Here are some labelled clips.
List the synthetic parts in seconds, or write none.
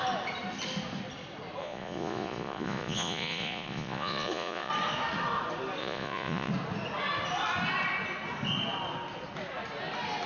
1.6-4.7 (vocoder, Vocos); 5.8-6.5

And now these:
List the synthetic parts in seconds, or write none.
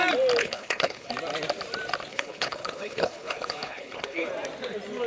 0.4-1.1 (codec, HILCodec); 2.1-4.3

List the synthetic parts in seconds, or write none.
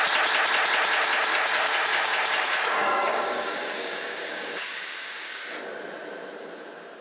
1.3-5.4 (codec, DAC)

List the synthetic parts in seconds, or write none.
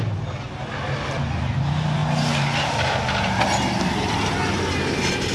none